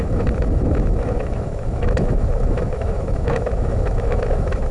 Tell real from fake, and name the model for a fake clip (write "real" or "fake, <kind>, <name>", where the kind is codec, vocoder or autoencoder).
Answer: fake, autoencoder, DAC-VAE